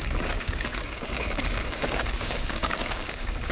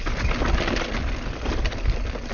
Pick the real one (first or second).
second